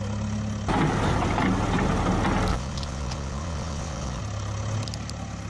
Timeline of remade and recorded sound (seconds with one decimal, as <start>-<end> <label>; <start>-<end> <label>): 0.0-2.5 recorded; 2.5-4.2 remade; 4.2-5.5 recorded